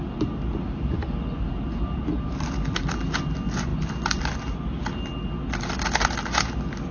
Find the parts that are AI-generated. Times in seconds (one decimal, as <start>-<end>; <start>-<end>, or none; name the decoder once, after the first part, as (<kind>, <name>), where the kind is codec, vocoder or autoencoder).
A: none